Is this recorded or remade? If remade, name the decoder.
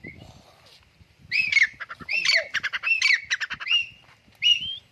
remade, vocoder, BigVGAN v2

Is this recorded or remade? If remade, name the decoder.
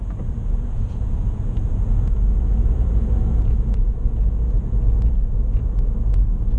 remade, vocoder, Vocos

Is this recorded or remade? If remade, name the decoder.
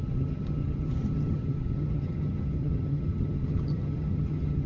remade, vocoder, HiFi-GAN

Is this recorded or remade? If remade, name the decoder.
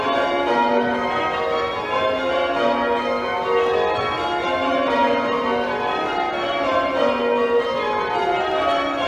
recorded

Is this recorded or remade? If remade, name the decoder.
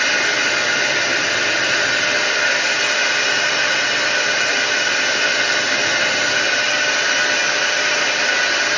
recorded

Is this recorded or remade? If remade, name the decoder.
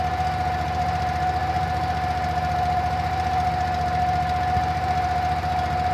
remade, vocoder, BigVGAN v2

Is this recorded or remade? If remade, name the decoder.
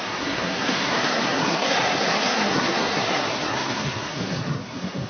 remade, codec, SNAC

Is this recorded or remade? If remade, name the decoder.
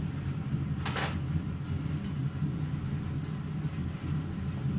recorded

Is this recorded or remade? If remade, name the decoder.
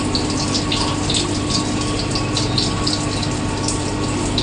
recorded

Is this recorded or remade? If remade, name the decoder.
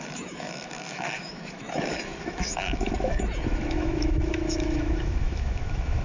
remade, autoencoder, DAC-VAE